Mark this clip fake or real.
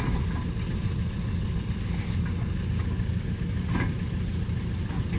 real